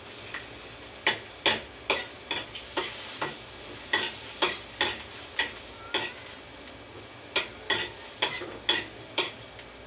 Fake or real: real